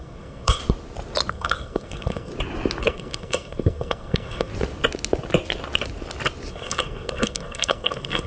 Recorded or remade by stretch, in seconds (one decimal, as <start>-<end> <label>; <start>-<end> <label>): 0.0-0.6 remade; 0.6-1.3 recorded; 1.3-2.3 remade; 2.3-2.8 recorded; 2.8-4.5 remade; 4.5-6.5 recorded; 6.5-8.3 remade